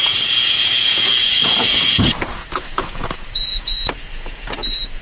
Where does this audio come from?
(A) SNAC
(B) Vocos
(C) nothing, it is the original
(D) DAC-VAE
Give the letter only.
B